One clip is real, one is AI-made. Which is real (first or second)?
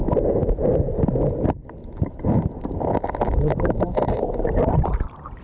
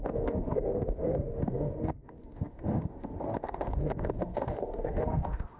first